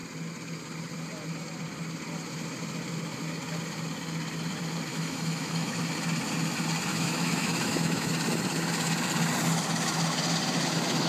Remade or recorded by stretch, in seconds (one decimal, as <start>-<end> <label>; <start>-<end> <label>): 0.0-4.9 recorded; 4.9-5.8 remade; 5.8-6.9 recorded; 6.9-8.1 remade; 8.1-11.1 recorded